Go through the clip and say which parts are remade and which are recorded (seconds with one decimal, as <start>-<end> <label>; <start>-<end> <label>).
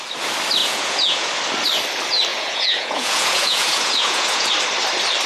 0.0-0.6 recorded; 0.6-1.3 remade; 1.3-2.3 recorded; 2.3-4.5 remade; 4.5-5.3 recorded